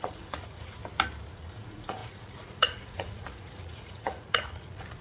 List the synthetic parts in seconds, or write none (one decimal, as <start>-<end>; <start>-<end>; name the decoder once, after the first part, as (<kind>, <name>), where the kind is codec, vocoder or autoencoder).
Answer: 0.0-0.8 (vocoder, Vocos); 1.3-5.0